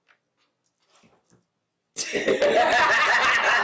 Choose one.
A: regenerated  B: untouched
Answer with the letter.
B